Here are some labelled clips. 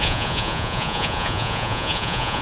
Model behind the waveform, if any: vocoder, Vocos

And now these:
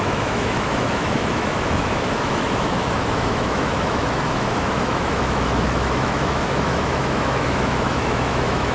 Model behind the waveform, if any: autoencoder, DAC-VAE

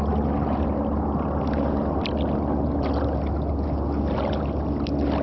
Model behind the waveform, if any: none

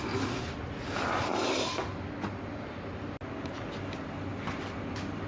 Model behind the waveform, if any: none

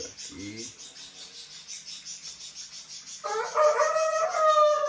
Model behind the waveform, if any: none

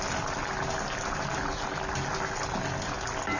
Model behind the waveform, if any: none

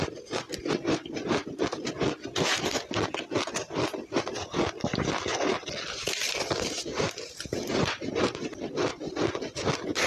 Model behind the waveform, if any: none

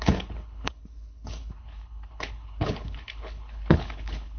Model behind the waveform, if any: codec, HILCodec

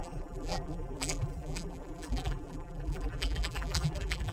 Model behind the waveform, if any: vocoder, BigVGAN v2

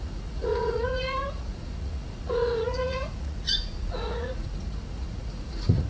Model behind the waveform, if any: vocoder, Vocos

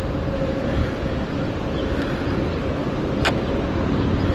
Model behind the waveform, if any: none